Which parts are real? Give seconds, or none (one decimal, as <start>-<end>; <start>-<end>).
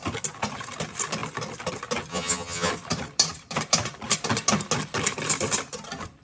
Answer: 0.0-2.1; 2.7-6.2